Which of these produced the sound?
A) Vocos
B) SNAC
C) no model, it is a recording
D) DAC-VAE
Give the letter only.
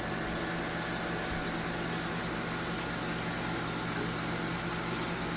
C